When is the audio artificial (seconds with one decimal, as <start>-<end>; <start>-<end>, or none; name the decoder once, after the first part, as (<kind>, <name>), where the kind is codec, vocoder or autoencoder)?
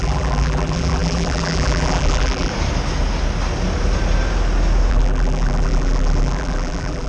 0.0-2.5 (vocoder, BigVGAN v2); 4.9-7.1